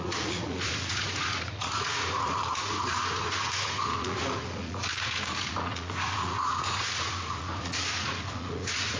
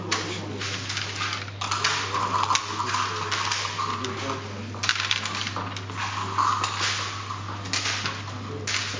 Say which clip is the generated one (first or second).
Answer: first